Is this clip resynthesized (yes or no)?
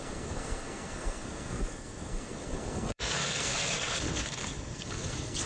yes